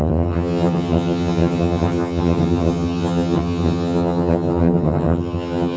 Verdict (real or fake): fake